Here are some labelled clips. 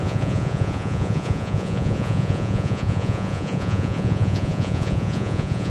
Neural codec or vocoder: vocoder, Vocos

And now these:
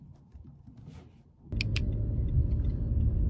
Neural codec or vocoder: none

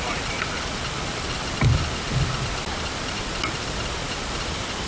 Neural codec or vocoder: none